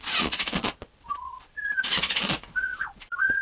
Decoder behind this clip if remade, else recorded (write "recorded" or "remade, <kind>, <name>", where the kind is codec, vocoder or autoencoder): remade, vocoder, Vocos